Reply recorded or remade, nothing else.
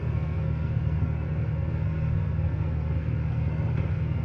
remade